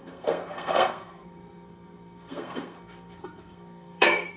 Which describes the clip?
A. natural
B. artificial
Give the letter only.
B